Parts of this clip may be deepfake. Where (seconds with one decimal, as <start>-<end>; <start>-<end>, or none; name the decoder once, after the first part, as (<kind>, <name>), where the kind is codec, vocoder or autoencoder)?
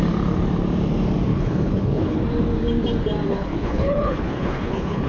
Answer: 1.3-2.2 (codec, HILCodec); 3.3-5.1